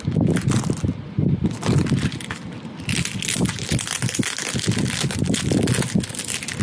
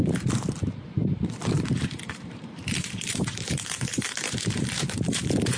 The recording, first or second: first